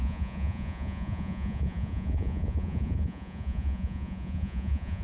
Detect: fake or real fake